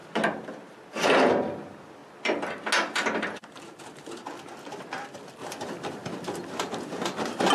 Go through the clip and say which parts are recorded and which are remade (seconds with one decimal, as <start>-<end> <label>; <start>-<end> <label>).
0.0-7.5 recorded